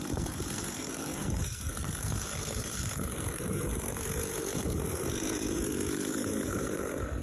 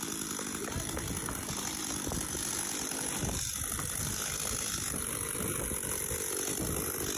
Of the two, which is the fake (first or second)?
first